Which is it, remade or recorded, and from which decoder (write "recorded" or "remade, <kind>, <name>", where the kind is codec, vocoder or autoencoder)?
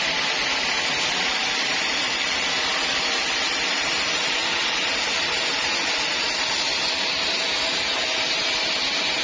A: recorded